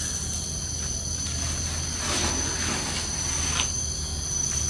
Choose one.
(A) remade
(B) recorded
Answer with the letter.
B